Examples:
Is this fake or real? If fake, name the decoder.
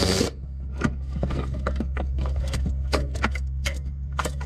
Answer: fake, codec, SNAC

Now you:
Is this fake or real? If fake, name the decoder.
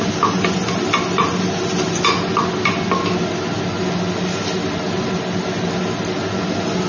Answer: real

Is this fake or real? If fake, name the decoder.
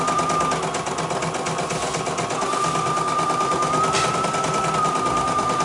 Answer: real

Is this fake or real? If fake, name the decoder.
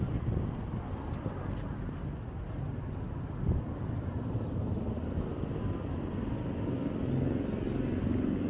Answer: real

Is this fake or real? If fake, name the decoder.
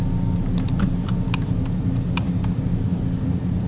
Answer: real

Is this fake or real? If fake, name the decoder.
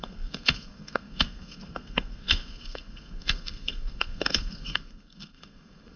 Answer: fake, codec, SNAC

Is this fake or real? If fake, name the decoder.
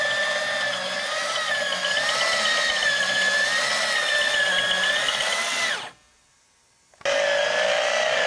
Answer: real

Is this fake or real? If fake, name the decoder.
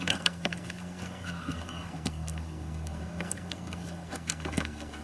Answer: fake, codec, SNAC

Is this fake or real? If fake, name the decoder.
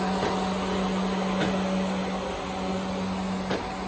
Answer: real